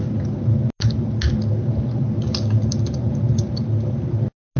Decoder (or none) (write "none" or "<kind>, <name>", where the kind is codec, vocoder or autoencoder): none